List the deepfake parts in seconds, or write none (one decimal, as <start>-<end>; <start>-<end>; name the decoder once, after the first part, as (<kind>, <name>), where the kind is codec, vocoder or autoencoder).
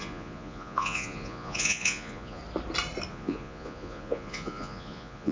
0.0-2.4 (vocoder, Vocos); 3.1-5.3